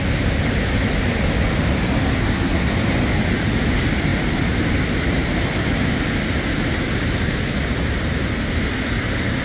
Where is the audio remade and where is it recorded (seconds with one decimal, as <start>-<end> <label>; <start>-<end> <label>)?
0.0-2.2 recorded; 2.2-2.7 remade; 2.7-9.4 recorded